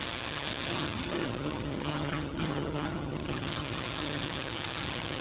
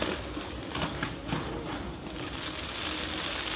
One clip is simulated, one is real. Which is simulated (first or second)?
first